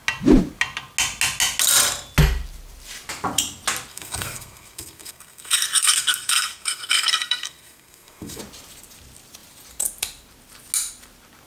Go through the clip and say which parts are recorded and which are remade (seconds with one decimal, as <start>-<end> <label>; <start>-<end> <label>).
0.0-3.9 recorded; 3.9-8.4 remade; 8.4-11.5 recorded